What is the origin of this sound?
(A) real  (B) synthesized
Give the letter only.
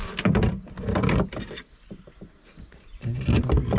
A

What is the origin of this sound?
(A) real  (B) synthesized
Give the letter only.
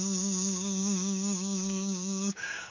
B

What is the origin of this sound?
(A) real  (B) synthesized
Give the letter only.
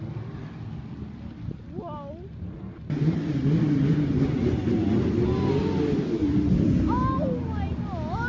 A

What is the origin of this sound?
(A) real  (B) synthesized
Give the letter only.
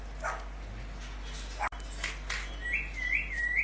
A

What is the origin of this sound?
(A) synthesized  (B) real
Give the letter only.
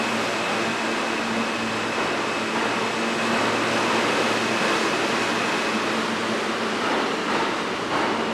B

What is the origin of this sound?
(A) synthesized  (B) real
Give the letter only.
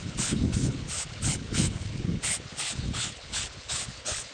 A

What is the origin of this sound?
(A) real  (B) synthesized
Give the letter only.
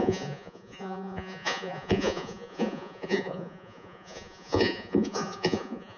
B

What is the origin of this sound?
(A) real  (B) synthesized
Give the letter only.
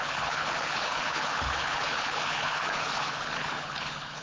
B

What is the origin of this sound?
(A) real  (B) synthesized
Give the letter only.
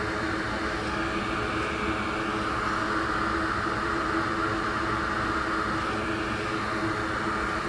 A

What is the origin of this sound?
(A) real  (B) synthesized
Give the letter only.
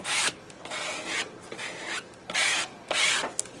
A